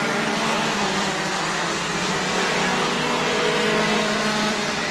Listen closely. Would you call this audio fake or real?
real